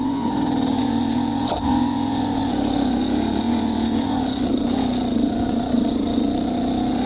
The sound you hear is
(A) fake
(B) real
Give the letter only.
A